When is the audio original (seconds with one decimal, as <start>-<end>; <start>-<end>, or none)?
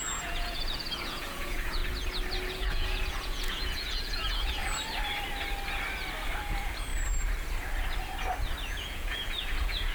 1.8-2.5; 4.6-6.4; 6.9-8.7